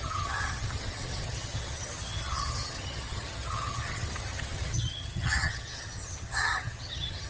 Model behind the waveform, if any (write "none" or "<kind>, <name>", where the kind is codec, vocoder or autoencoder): vocoder, HiFi-GAN